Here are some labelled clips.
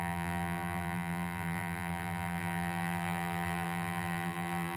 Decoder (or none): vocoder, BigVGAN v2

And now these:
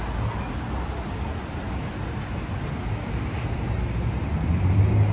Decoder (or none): none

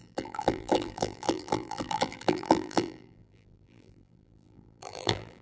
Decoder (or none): vocoder, BigVGAN v2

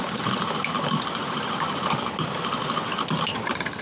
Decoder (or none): none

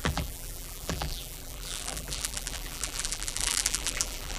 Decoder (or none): vocoder, BigVGAN v2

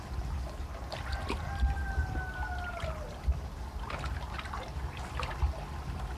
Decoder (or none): none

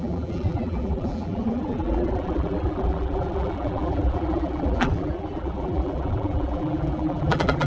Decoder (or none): vocoder, BigVGAN v2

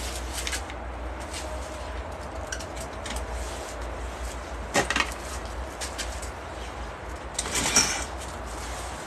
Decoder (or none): none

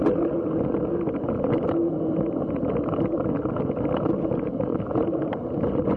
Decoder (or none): none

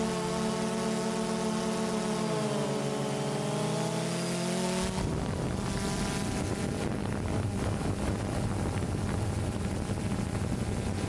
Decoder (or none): none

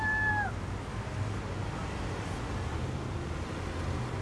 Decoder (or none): none